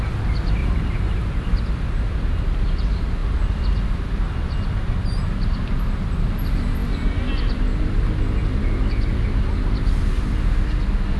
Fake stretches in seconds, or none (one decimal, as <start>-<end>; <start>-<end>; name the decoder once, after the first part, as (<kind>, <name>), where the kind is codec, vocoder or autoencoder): 0.6-1.6 (vocoder, BigVGAN v2)